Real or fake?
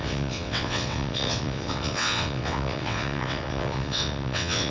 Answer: fake